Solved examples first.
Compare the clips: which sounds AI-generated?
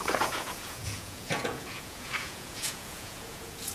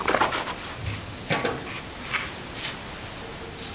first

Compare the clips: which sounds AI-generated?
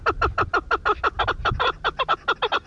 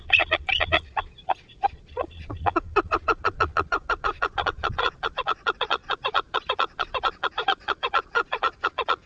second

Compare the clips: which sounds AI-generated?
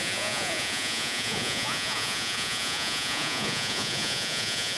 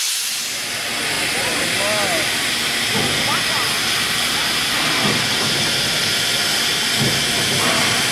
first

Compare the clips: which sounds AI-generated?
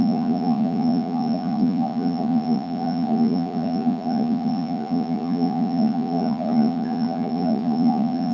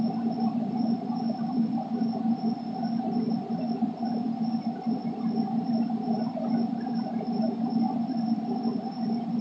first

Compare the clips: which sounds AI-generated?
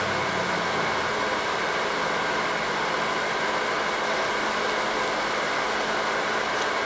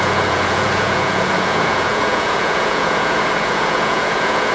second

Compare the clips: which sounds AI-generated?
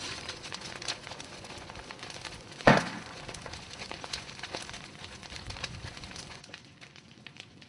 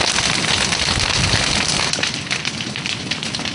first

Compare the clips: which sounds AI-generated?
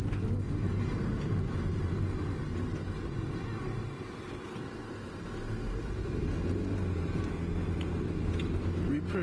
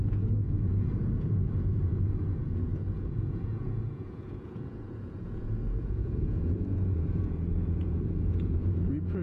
second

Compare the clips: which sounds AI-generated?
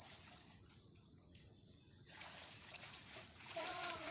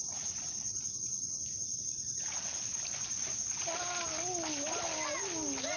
first